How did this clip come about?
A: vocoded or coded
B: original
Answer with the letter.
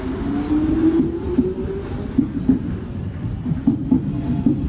B